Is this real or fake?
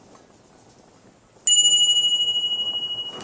real